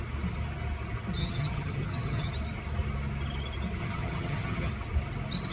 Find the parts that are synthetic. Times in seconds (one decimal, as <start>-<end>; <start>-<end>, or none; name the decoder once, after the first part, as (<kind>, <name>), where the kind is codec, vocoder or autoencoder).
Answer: 1.2-2.3 (vocoder, HiFi-GAN); 3.8-4.7